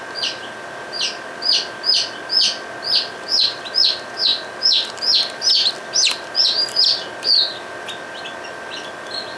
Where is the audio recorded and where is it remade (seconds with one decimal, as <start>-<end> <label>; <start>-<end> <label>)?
0.0-9.4 recorded